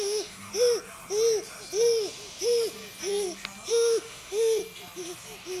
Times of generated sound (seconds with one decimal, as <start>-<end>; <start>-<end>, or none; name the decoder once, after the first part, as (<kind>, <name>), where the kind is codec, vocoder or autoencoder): 0.0-0.5 (autoencoder, DAC-VAE); 3.7-4.6

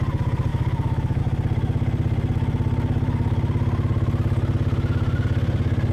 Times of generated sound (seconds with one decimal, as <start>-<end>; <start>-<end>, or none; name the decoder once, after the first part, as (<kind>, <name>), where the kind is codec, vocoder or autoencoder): 0.5-1.2 (autoencoder, DAC-VAE)